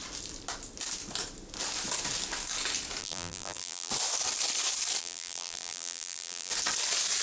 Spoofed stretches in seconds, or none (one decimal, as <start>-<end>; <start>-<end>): 3.0-3.9; 5.0-6.5

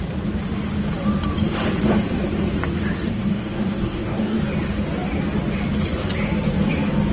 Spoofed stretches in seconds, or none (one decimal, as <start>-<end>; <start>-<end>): 3.1-4.4